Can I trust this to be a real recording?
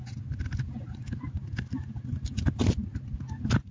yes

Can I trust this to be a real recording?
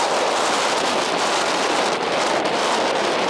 yes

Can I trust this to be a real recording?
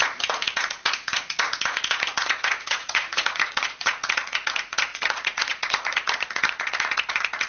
no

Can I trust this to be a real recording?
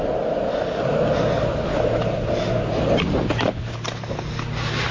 yes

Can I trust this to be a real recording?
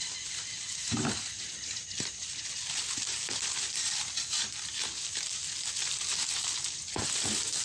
yes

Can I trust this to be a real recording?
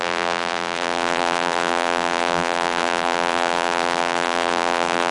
no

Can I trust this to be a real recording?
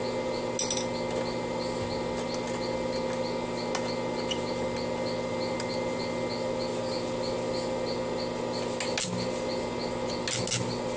yes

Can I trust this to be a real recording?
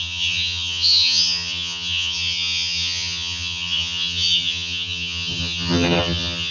no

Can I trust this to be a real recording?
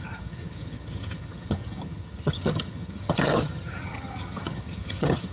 no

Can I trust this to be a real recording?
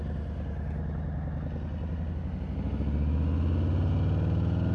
yes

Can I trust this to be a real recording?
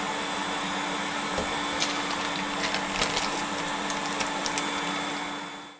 yes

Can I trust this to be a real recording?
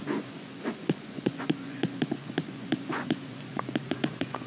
no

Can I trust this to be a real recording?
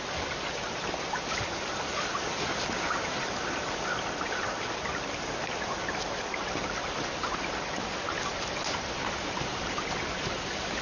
yes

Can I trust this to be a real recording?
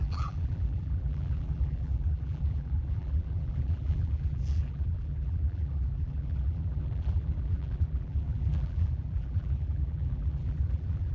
no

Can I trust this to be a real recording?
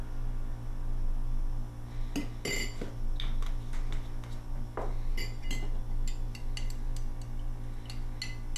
yes